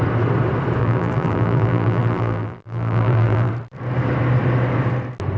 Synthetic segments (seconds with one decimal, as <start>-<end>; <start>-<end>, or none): 0.8-3.5

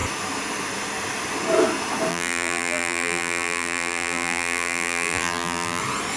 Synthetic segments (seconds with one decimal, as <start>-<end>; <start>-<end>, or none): 2.1-5.8